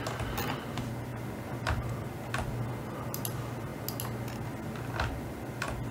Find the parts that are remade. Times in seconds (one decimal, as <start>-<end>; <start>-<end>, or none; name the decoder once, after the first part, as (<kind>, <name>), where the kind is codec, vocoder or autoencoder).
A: none